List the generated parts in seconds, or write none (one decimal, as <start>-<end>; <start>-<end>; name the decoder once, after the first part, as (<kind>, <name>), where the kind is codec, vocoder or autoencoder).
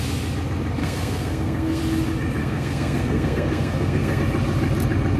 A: 0.8-1.8 (codec, SNAC); 2.4-4.2